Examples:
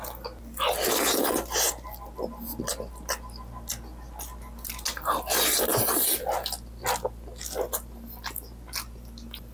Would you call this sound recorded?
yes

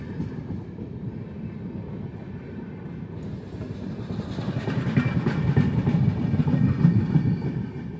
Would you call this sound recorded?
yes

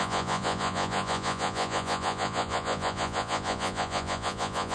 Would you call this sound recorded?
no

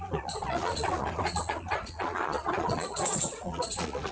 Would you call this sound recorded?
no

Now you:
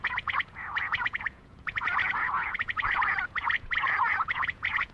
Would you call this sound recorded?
no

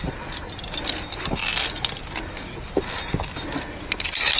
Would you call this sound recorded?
yes